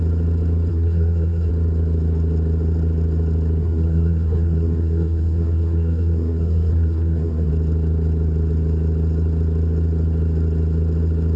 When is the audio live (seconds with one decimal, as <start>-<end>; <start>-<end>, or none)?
0.0-0.7; 1.5-3.6; 7.5-11.4